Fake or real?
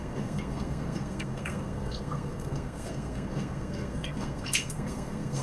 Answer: fake